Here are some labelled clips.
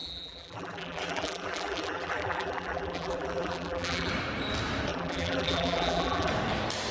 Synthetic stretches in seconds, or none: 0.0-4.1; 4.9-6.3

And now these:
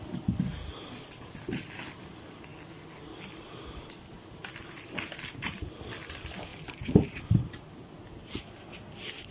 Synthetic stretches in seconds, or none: 6.5-7.7